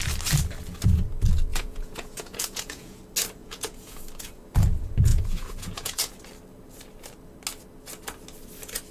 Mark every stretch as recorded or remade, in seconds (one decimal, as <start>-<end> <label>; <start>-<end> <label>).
0.0-1.5 recorded; 1.5-3.0 remade; 3.0-3.4 recorded; 3.4-4.0 remade; 4.0-5.1 recorded; 5.1-6.1 remade; 6.1-8.9 recorded